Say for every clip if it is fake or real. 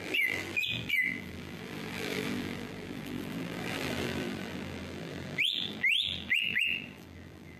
fake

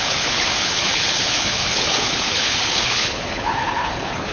fake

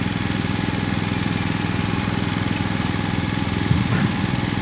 real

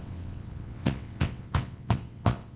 fake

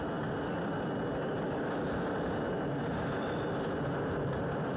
real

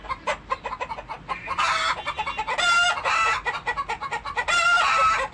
real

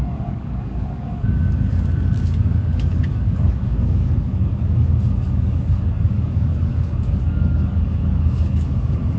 fake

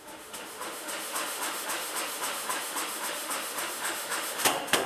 fake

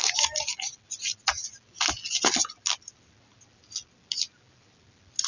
real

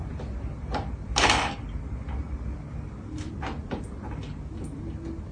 real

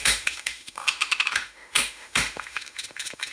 fake